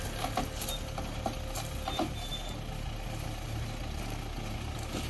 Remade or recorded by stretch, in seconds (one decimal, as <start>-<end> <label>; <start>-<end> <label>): 0.0-5.1 recorded